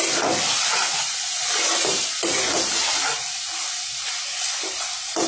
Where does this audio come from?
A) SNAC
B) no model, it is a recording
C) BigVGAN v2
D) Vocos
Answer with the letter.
B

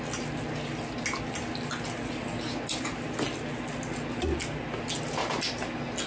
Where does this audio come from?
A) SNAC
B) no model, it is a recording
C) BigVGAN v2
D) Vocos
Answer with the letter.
B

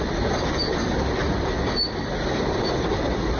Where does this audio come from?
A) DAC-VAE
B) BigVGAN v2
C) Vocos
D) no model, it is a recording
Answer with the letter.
D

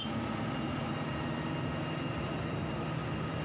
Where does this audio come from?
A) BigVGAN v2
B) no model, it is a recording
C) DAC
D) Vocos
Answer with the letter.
B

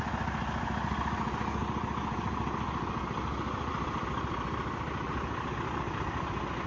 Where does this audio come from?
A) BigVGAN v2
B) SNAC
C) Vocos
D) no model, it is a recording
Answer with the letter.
D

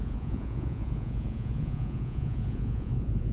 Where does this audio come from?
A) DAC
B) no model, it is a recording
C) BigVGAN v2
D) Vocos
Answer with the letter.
D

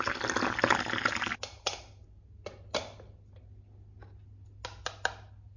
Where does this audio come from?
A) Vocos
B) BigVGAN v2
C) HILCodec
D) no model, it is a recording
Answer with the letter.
D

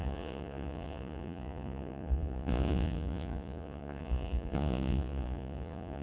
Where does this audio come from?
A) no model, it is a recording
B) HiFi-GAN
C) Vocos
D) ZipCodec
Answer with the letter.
C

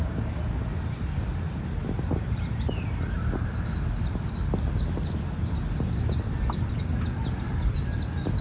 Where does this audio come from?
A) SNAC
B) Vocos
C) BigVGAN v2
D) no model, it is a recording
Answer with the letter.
D